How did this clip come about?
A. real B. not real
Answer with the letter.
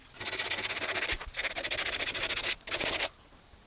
A